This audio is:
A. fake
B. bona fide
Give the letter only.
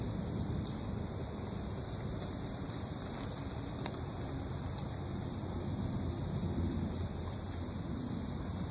B